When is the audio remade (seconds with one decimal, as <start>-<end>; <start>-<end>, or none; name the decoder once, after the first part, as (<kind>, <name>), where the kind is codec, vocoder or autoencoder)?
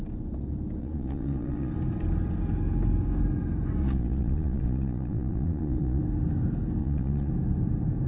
0.8-1.7 (vocoder, Vocos); 3.8-6.0; 6.8-7.3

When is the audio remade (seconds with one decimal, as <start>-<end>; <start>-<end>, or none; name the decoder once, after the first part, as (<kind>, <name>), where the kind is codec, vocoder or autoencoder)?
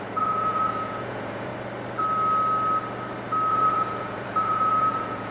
0.0-1.5 (vocoder, Vocos); 3.5-5.3